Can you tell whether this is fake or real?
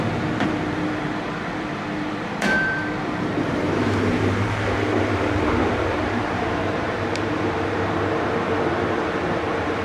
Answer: fake